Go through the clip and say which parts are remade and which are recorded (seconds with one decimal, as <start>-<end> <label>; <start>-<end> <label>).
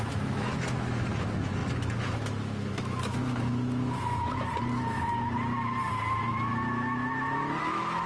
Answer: 0.0-4.5 remade; 4.5-7.6 recorded; 7.6-8.1 remade